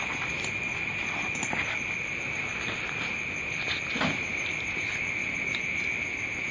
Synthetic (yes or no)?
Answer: no